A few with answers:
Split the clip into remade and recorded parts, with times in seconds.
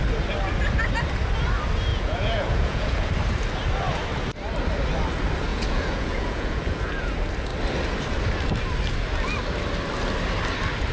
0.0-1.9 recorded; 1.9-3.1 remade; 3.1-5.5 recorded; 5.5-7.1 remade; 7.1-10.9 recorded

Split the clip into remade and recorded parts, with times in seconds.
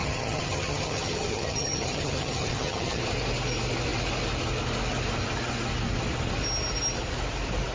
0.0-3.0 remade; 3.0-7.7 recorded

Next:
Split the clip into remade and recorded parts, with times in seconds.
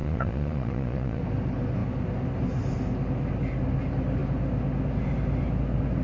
0.0-1.2 remade; 1.2-6.0 recorded